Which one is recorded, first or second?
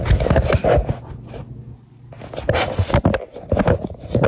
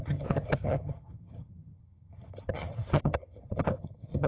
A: first